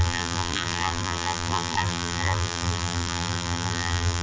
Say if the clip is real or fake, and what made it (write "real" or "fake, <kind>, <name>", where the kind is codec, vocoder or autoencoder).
fake, vocoder, BigVGAN v2